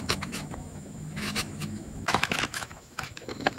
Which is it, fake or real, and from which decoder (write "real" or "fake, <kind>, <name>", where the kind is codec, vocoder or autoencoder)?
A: fake, autoencoder, DAC-VAE